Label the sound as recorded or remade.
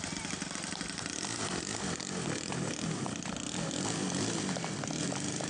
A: recorded